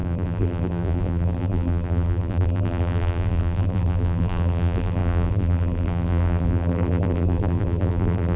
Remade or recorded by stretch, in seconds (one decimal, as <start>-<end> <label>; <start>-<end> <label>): 0.0-8.4 remade